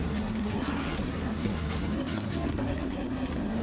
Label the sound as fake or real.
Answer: fake